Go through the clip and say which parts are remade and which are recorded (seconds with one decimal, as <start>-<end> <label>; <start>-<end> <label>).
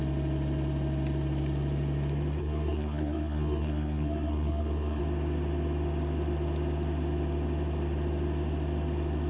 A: 0.0-2.4 recorded; 2.4-5.0 remade; 5.0-9.3 recorded